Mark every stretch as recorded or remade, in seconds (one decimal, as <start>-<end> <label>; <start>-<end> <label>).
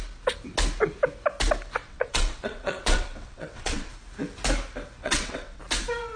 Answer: 0.0-1.8 recorded; 1.8-3.9 remade; 3.9-5.0 recorded; 5.0-5.6 remade; 5.6-6.2 recorded